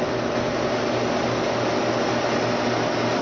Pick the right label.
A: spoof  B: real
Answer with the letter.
B